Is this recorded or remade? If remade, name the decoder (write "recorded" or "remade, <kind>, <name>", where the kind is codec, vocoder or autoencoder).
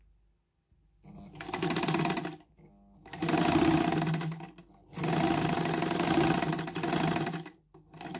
recorded